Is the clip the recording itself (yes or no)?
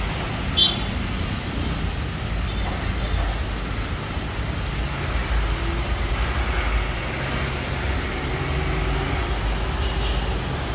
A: yes